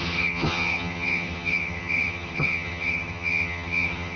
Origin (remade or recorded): remade